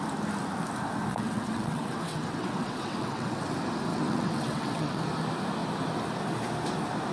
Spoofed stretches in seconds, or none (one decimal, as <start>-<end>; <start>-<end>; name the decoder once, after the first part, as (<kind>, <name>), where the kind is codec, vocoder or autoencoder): 1.1-3.4 (vocoder, WaveNeXt); 3.9-5.0